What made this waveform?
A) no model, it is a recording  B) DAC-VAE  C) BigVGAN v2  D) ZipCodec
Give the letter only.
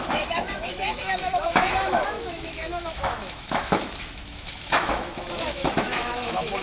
B